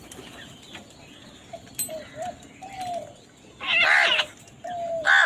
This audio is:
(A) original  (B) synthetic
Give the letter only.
A